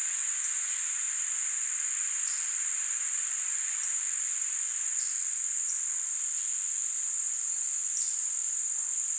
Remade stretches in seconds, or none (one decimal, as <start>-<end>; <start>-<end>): 0.0-4.2; 6.8-7.6; 8.4-9.2